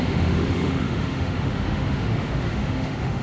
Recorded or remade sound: remade